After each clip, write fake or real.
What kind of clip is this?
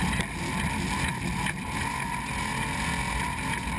real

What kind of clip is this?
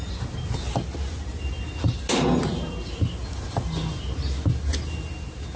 real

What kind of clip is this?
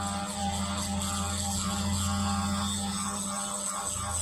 real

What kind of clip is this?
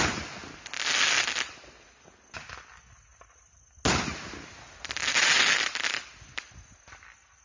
real